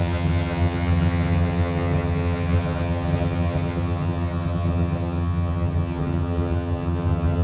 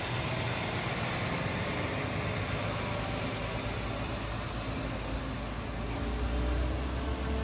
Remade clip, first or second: first